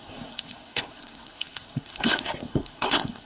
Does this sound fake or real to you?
fake